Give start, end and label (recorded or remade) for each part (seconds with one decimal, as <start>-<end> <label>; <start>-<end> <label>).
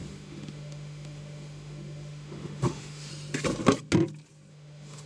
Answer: 0.0-3.1 remade; 3.1-4.5 recorded; 4.5-5.1 remade